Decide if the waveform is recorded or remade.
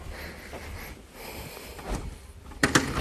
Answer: recorded